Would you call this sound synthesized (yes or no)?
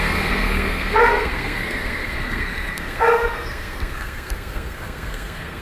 yes